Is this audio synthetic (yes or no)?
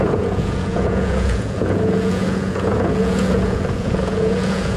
yes